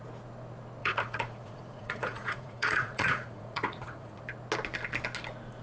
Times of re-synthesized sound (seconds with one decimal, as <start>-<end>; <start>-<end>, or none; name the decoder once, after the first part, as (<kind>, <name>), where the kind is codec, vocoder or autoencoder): 0.8-4.2 (vocoder, Vocos)